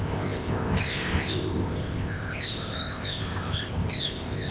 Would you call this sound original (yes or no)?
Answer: no